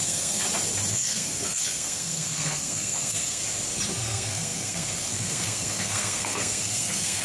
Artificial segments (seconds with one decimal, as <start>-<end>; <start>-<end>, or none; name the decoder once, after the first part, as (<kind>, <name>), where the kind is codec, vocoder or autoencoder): 0.0-0.4 (codec, SNAC); 0.9-3.4; 4.0-7.2